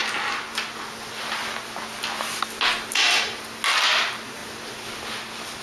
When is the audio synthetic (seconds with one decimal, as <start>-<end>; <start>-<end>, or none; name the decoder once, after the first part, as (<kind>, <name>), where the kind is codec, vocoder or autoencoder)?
none